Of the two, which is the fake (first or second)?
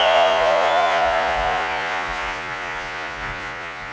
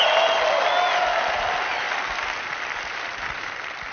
first